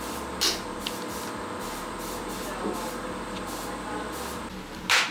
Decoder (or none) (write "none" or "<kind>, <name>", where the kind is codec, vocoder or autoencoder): none